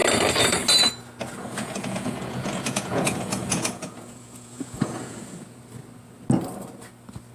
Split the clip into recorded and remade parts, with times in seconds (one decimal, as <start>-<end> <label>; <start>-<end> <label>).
0.0-1.4 recorded; 1.4-5.6 remade; 5.6-7.3 recorded